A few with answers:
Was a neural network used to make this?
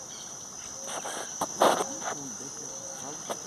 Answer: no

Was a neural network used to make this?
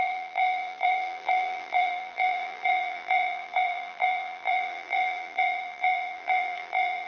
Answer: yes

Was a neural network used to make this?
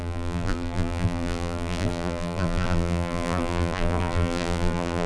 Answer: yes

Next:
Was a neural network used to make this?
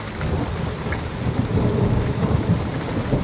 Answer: no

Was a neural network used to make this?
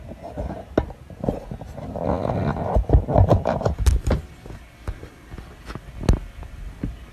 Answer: no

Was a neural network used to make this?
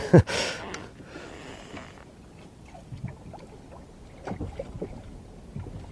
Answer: no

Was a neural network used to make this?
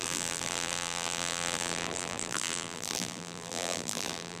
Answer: yes